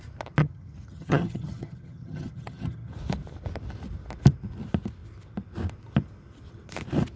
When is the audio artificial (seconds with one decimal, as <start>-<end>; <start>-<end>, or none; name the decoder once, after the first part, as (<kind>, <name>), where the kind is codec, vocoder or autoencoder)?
0.4-2.9 (vocoder, HiFi-GAN)